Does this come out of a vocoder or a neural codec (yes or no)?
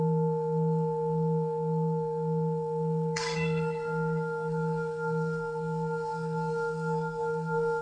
yes